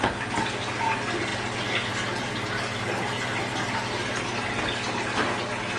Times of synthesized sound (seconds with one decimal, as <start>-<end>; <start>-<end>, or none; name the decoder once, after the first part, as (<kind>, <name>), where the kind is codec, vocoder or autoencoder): none

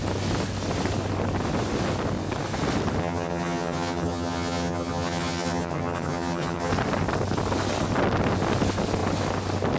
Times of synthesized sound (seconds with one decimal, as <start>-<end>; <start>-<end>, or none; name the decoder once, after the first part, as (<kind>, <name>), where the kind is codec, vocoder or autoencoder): 3.0-6.7 (vocoder, HiFi-GAN)